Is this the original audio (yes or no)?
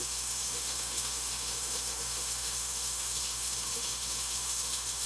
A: no